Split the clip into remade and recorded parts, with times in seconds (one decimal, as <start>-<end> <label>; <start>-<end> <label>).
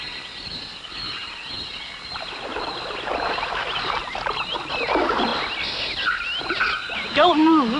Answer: 0.0-7.8 recorded